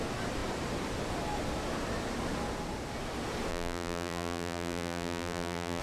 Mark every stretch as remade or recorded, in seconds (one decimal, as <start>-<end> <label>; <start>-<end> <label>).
0.0-3.5 recorded; 3.5-5.8 remade